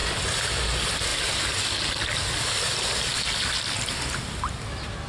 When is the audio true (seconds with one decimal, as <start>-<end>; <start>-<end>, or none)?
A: 0.0-5.1